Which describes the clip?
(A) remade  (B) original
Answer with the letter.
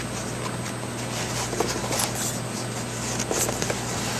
B